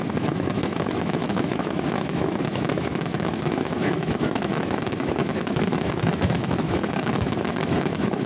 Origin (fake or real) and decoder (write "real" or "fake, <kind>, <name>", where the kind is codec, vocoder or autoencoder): fake, autoencoder, DAC-VAE